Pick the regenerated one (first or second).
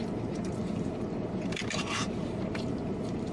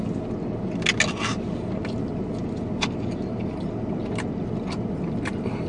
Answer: first